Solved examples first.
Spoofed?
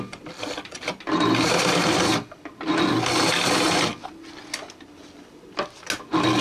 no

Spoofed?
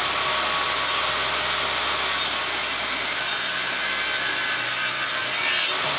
yes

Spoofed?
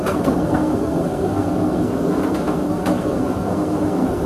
yes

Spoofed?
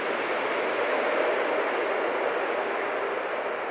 no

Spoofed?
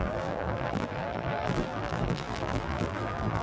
yes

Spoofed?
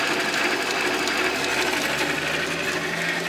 no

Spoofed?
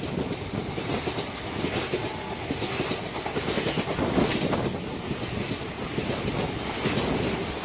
no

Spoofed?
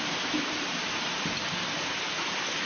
no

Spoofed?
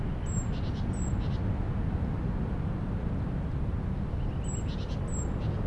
no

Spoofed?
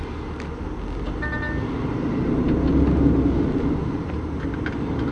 no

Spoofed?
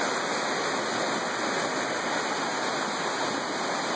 no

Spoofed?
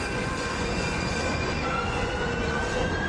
yes